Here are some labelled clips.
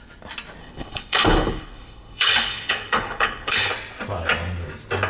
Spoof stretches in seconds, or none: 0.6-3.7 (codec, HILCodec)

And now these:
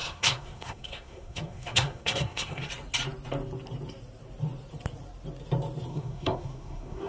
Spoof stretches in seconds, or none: 0.0-2.7 (codec, SNAC); 5.9-7.1

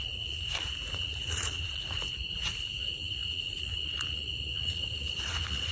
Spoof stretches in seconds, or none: 0.0-5.7 (vocoder, Vocos)

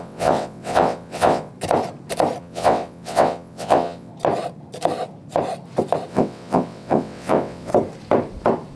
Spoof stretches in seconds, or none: 0.0-1.5 (vocoder, WaveNeXt); 2.4-4.1; 6.1-7.7

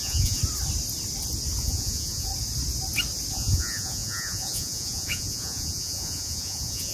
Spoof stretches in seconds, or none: 0.0-0.4 (vocoder, Vocos); 1.6-2.3; 3.3-6.9

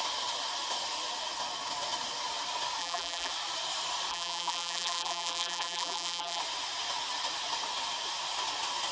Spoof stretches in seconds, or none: 2.8-3.3 (vocoder, BigVGAN v2); 4.1-6.4

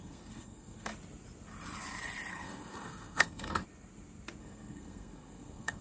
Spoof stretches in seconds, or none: 0.0-0.9 (codec, SNAC); 2.3-3.6; 4.4-5.8

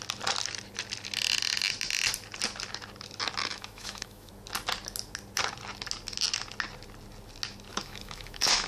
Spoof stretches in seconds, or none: 3.4-4.3 (autoencoder, DAC-VAE); 7.7-8.7